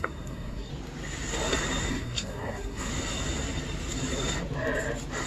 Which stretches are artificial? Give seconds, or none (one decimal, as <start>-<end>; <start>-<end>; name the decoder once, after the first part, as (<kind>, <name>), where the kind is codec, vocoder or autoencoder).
0.0-0.7 (codec, SNAC); 1.9-2.9